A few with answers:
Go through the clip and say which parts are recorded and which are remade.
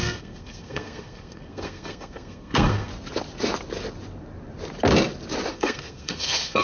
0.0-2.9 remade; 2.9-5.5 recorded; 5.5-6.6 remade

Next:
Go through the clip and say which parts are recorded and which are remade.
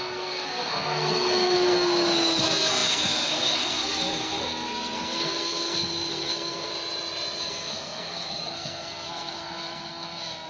0.0-6.7 remade; 6.7-7.4 recorded; 7.4-10.5 remade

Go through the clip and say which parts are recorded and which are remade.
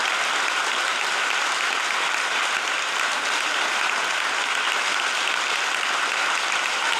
0.0-7.0 recorded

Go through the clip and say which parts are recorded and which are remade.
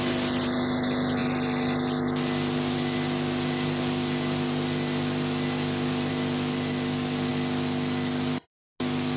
0.0-9.2 recorded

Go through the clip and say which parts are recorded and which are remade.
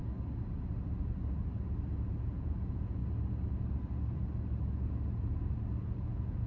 0.0-2.2 recorded; 2.2-3.0 remade; 3.0-5.8 recorded; 5.8-6.5 remade